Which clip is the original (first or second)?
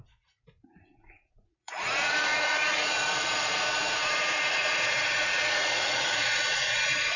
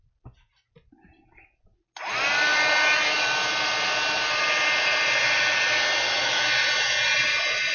second